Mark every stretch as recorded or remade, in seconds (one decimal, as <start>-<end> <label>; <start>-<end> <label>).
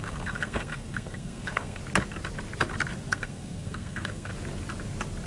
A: 0.0-1.8 remade; 1.8-3.1 recorded; 3.1-4.3 remade; 4.3-5.3 recorded